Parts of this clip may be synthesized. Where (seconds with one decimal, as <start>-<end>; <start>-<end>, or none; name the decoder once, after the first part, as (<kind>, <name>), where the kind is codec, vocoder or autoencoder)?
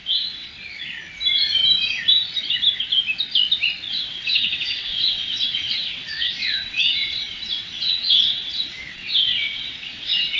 0.0-0.5 (vocoder, WaveNeXt); 3.9-10.4